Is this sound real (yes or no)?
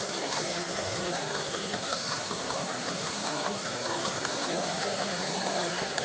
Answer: no